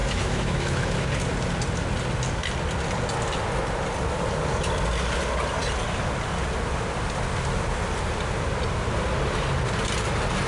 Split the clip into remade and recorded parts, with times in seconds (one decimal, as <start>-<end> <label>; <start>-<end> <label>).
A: 0.0-1.1 remade; 1.1-10.5 recorded